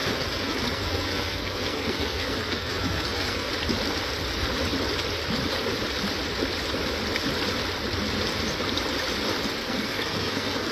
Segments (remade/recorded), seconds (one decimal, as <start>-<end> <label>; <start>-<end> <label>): 0.0-3.5 remade; 3.5-9.6 recorded; 9.6-10.7 remade